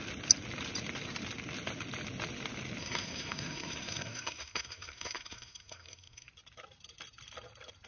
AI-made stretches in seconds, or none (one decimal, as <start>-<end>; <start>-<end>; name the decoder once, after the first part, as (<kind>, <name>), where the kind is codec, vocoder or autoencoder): 2.8-6.3 (codec, SNAC)